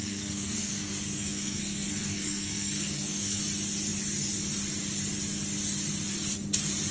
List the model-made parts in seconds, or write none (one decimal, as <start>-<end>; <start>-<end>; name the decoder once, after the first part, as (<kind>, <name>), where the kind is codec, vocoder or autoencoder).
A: 0.0-3.4 (codec, SNAC)

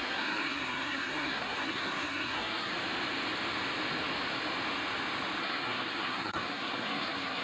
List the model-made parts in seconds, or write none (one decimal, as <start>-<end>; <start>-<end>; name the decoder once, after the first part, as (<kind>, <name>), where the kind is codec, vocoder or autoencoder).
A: 0.0-2.7 (codec, SNAC); 5.4-7.4

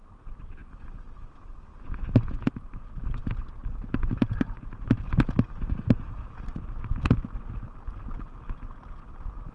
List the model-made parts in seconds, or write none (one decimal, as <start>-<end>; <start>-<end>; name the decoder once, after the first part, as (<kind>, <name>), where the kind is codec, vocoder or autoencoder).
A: none